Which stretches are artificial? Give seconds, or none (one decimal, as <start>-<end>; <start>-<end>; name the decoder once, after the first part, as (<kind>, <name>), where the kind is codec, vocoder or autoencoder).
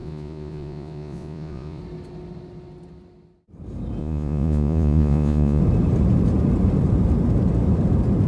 0.0-1.8 (vocoder, Vocos); 4.0-5.6